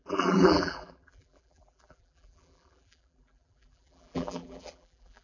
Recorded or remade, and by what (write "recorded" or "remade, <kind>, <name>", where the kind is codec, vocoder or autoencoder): remade, vocoder, BigVGAN v2